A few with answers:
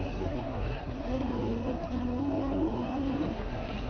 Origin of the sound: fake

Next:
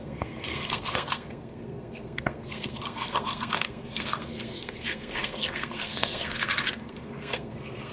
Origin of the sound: fake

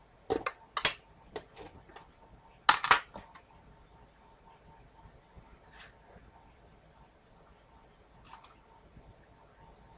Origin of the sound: real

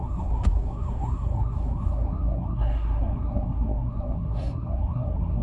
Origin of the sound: fake